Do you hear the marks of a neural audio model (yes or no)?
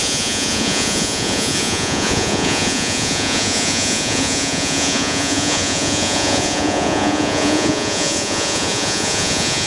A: yes